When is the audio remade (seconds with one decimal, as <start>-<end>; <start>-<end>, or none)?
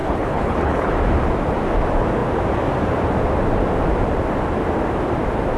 0.0-0.9